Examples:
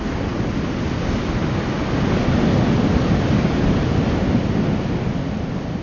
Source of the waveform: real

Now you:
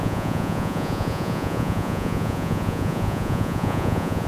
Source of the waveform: fake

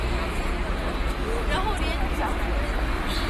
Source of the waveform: real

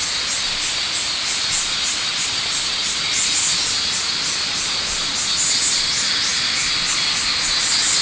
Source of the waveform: real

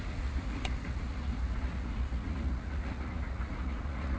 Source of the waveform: fake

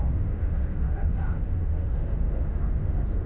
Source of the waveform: fake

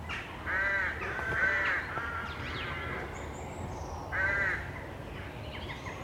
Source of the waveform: fake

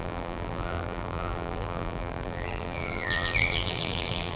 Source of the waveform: fake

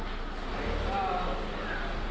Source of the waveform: real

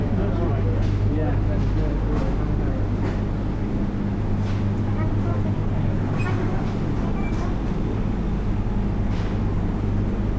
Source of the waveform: real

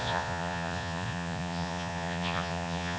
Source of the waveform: fake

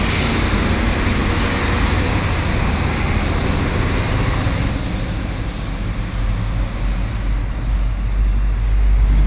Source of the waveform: real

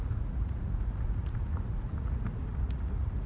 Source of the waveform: fake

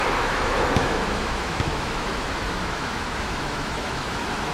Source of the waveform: fake